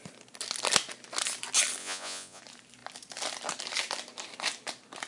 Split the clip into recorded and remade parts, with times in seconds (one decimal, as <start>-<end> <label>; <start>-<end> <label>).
0.0-1.8 recorded; 1.8-2.4 remade; 2.4-5.1 recorded

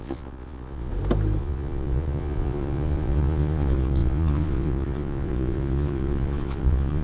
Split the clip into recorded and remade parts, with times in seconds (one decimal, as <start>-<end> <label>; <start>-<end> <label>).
0.0-0.9 remade; 0.9-1.4 recorded; 1.4-7.0 remade

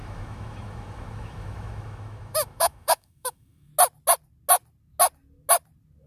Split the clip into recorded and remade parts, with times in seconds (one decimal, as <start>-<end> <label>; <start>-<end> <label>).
0.0-3.7 remade; 3.7-6.1 recorded

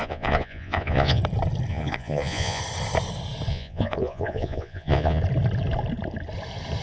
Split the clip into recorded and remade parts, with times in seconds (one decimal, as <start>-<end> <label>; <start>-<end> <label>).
0.0-1.2 remade; 1.2-1.7 recorded; 1.7-2.6 remade; 2.6-3.5 recorded; 3.5-5.2 remade; 5.2-6.8 recorded

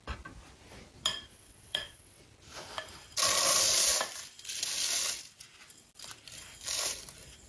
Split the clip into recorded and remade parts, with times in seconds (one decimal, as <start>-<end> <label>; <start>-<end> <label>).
0.0-1.3 recorded; 1.3-2.2 remade; 2.2-7.5 recorded

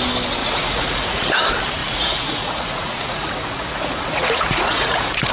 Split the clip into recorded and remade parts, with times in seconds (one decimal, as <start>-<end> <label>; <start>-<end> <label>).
0.0-0.4 recorded; 0.4-1.4 remade; 1.4-1.8 recorded; 1.8-5.3 remade